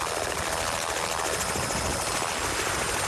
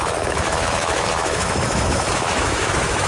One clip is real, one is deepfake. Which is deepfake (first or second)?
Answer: second